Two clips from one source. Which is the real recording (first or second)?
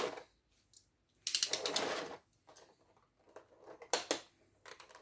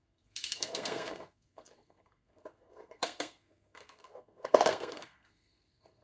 first